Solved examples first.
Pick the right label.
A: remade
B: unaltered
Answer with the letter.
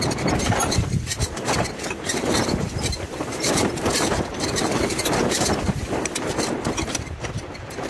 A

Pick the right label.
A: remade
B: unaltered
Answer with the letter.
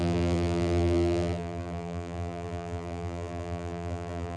A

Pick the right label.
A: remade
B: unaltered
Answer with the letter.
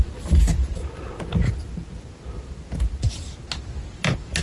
B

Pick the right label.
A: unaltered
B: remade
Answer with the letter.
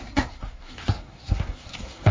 B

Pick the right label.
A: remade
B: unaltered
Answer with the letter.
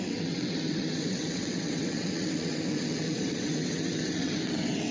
A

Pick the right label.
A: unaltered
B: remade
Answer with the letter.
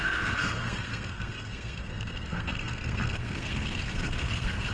B